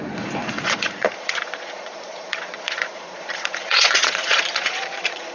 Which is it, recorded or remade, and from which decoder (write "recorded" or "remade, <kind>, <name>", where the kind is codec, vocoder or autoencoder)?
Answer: remade, vocoder, Vocos